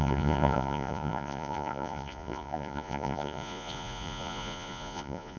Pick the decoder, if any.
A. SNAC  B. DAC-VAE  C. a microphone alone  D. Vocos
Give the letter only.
D